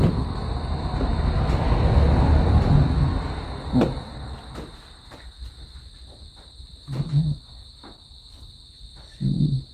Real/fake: real